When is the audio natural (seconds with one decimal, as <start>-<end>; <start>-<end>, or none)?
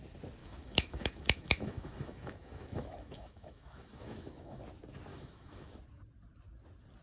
0.0-0.4; 4.6-5.1; 5.7-7.0